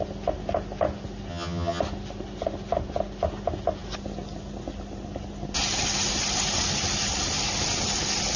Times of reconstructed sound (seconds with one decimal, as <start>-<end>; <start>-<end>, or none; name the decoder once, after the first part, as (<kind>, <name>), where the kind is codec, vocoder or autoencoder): 1.3-1.8 (vocoder, HiFi-GAN)